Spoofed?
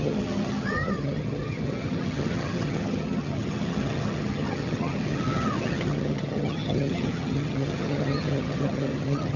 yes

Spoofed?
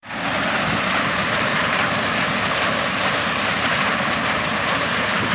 yes